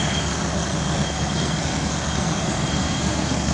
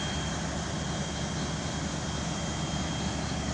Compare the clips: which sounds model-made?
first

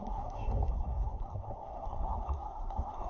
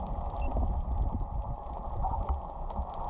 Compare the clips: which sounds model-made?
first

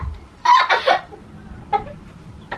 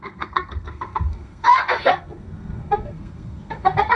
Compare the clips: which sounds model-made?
second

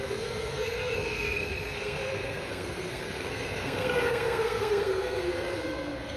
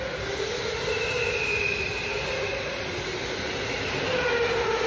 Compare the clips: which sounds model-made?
first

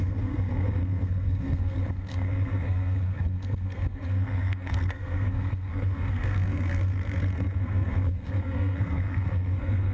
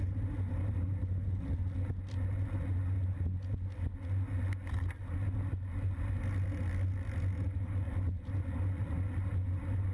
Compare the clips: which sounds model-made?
first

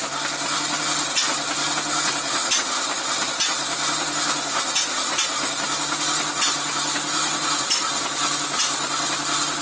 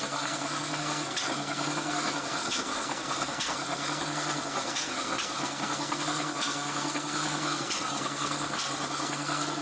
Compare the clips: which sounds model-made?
second